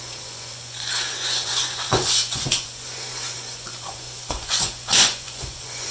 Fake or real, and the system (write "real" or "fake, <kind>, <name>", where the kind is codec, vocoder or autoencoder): fake, vocoder, Vocos